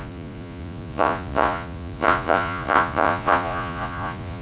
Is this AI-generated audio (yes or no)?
yes